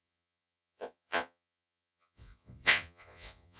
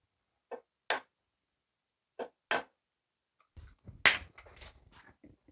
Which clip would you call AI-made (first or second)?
first